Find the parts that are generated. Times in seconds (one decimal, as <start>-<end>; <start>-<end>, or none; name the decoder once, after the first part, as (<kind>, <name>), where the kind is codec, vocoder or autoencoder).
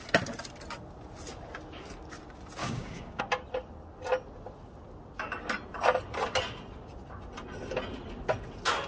2.6-3.2 (codec, DAC)